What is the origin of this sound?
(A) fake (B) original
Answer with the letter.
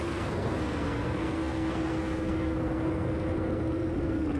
A